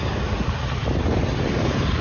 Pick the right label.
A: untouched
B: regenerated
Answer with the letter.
A